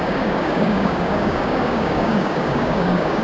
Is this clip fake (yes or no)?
yes